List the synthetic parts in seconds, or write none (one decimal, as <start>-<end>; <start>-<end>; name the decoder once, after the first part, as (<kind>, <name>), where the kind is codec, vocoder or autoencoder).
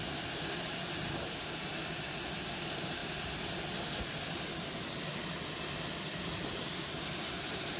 3.0-6.9 (vocoder, BigVGAN v2)